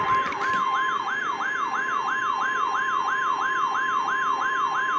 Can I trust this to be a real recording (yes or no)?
no